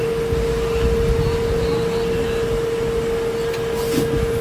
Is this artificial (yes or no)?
no